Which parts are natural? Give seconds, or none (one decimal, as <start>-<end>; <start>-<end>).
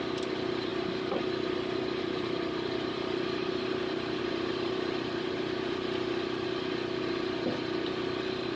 0.0-0.7; 4.2-8.6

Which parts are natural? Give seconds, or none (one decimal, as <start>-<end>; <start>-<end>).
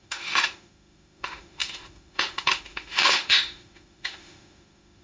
none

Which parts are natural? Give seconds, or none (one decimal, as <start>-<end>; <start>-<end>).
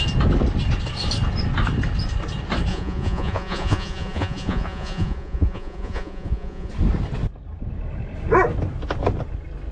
0.0-2.7; 6.7-9.7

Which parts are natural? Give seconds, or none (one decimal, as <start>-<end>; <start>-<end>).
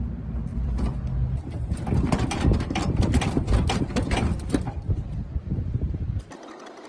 0.0-0.5; 1.6-4.3